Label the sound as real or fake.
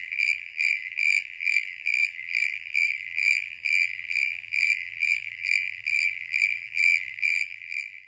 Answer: fake